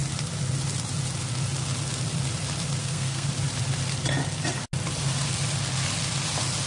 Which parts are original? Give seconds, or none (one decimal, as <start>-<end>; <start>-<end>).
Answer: 0.0-2.8; 3.3-6.7